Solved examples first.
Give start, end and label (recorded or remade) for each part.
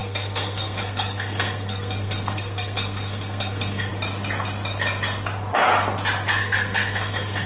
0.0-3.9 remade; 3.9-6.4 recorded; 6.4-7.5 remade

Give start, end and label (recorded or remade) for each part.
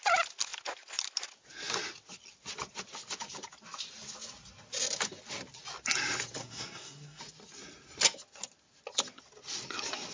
0.0-6.4 recorded; 6.4-7.2 remade; 7.2-10.1 recorded